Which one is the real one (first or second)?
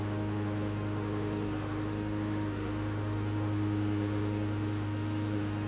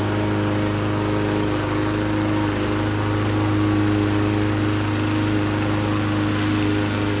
second